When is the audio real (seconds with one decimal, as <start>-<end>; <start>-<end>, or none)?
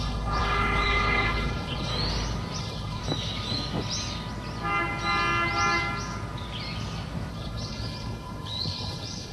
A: 1.9-2.6; 3.0-7.3